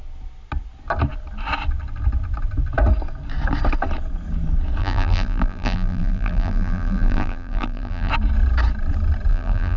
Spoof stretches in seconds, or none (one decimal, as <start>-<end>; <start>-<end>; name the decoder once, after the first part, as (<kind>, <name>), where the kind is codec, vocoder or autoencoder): 4.8-8.1 (vocoder, BigVGAN v2); 9.3-9.8